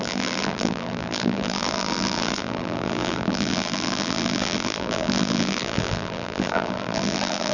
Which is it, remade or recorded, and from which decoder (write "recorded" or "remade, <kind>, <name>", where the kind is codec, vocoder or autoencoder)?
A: remade, vocoder, BigVGAN v2